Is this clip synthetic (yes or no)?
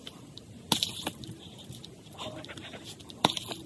no